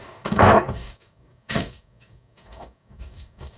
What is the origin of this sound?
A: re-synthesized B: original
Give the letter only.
A